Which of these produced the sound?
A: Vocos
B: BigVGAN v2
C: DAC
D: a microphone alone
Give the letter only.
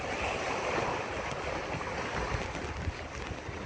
D